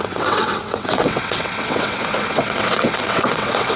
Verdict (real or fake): fake